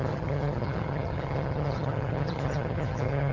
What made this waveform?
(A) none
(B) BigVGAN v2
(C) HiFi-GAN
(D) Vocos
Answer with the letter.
C